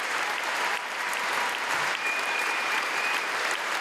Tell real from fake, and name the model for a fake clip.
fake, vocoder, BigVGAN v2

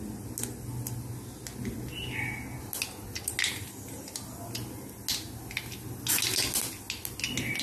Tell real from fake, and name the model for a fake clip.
real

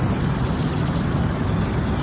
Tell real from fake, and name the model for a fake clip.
real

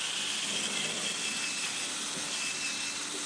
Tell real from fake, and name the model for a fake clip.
real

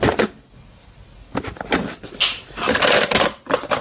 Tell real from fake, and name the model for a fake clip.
real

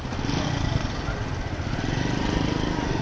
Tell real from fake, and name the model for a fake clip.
real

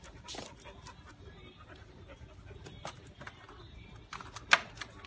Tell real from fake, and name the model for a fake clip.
real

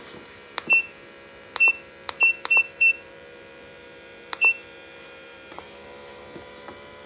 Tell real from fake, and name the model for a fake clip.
fake, vocoder, BigVGAN v2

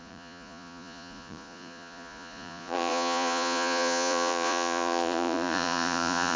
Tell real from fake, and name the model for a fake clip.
fake, vocoder, Vocos